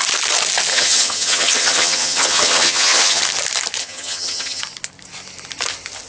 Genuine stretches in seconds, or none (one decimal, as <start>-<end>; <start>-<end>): 0.0-0.7; 3.2-3.8; 4.6-6.1